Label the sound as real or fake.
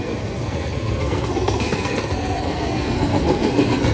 fake